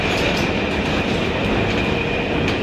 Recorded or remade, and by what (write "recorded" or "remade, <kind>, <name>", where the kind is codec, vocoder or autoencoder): recorded